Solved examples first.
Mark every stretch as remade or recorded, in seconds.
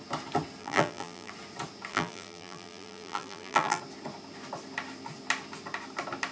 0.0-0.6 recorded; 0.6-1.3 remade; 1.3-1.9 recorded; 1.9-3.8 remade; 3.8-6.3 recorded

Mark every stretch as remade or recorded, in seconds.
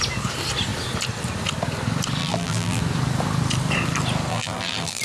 0.0-2.2 recorded; 2.2-2.8 remade; 2.8-4.3 recorded; 4.3-5.0 remade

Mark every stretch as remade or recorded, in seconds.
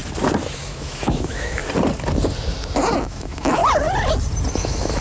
0.0-0.6 recorded; 0.6-1.6 remade; 1.6-3.0 recorded; 3.0-3.6 remade; 3.6-4.5 recorded; 4.5-5.0 remade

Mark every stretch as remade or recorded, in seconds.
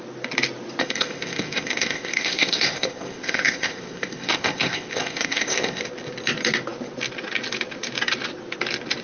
0.0-0.8 recorded; 0.8-5.8 remade; 5.8-9.0 recorded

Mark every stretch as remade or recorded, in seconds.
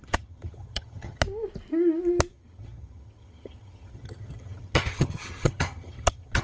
0.0-1.2 remade; 1.2-2.3 recorded; 2.3-6.4 remade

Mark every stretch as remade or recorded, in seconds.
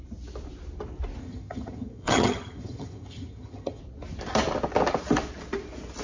0.0-1.2 recorded; 1.2-3.8 remade; 3.8-6.0 recorded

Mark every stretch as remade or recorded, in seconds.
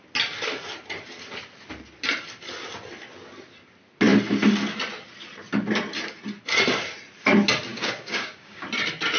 0.0-7.7 recorded; 7.7-8.6 remade; 8.6-9.2 recorded